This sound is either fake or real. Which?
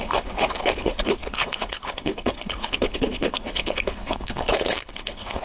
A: fake